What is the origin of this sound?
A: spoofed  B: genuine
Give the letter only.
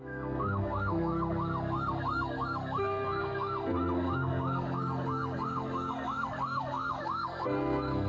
A